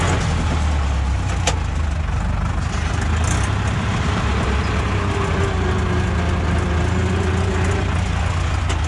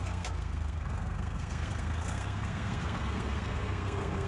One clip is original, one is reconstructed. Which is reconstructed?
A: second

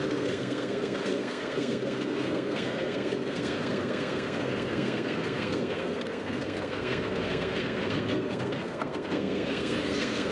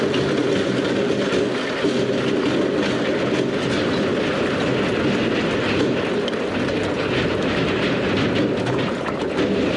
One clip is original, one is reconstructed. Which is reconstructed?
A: first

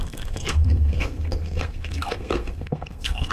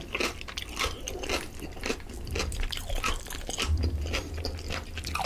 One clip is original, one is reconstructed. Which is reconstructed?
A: first